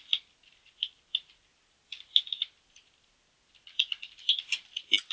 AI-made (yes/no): no